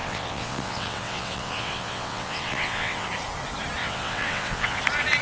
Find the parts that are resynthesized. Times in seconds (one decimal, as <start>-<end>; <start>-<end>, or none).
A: 0.0-3.1; 3.8-4.8